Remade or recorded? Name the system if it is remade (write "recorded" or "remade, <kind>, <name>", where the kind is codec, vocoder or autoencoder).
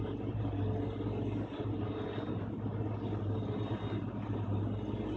recorded